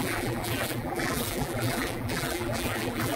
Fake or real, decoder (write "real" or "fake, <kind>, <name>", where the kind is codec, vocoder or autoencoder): fake, vocoder, BigVGAN v2